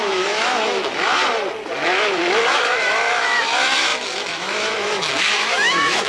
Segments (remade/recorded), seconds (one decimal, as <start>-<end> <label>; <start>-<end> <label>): 0.0-1.2 remade; 1.2-1.9 recorded; 1.9-6.1 remade